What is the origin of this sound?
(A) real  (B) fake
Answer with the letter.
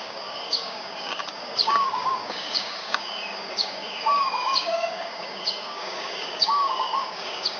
B